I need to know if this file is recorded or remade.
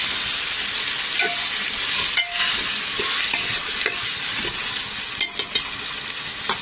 recorded